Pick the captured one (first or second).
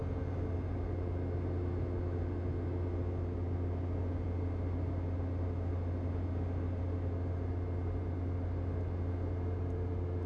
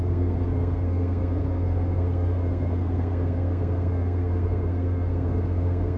first